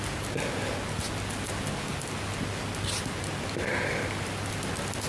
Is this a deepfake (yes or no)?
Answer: no